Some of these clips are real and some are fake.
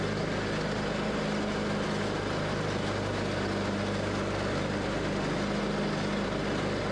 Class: real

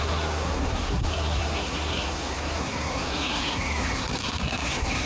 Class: fake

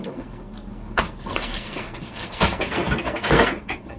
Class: fake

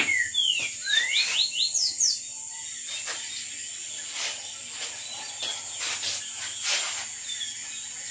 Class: real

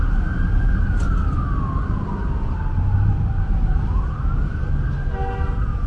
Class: real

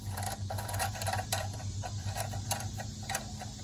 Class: real